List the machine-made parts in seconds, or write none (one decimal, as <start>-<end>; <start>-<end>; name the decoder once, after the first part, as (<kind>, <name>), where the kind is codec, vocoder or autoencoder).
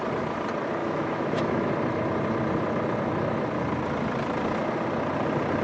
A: 0.8-1.7 (autoencoder, DAC-VAE)